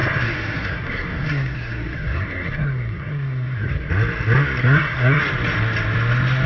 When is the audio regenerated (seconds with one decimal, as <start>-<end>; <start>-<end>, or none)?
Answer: 0.0-3.9; 4.6-5.2

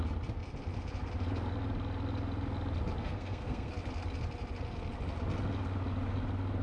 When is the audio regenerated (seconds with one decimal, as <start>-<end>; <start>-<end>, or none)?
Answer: 3.0-3.7

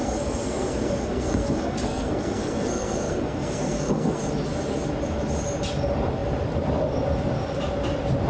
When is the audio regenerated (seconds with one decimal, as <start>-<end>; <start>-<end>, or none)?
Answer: 0.0-4.2